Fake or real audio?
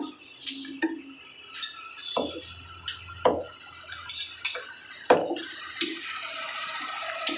real